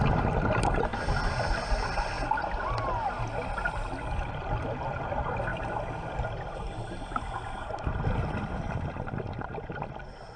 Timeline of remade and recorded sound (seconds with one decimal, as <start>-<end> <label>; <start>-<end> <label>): 0.0-10.4 recorded